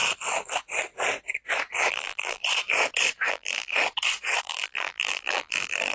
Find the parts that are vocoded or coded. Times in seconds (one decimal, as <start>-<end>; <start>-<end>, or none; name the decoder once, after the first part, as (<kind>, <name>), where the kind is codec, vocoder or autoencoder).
1.9-2.4 (vocoder, BigVGAN v2); 3.3-3.7; 4.4-5.9